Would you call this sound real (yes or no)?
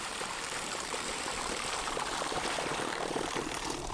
no